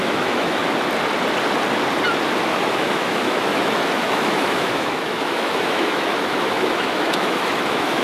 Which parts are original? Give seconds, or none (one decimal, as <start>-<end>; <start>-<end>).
0.6-2.4